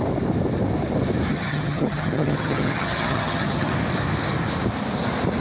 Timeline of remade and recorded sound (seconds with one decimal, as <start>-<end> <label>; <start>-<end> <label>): 0.0-1.3 recorded; 1.3-3.7 remade; 3.7-5.4 recorded